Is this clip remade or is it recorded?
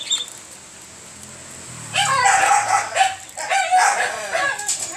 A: recorded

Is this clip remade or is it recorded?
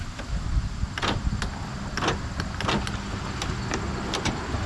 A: recorded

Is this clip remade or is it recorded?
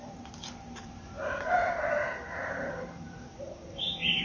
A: remade